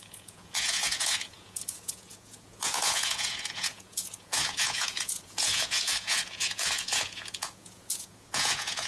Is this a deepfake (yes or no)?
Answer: yes